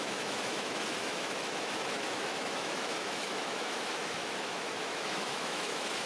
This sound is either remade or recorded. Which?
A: remade